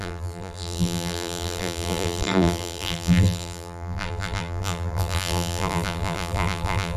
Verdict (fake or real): fake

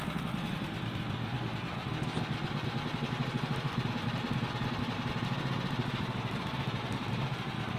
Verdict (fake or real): real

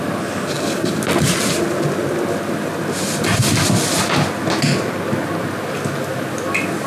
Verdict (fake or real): real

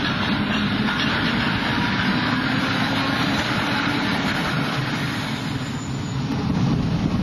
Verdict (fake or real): real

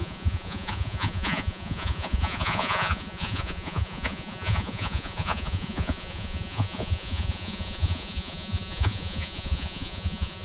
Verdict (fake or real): fake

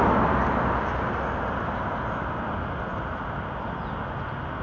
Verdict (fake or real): real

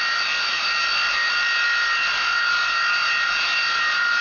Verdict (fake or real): real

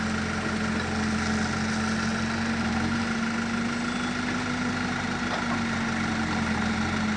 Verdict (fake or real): real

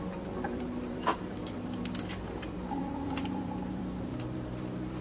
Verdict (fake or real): fake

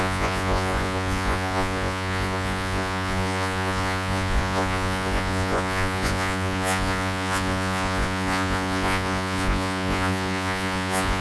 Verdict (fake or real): fake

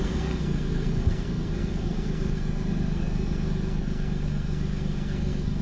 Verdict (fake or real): fake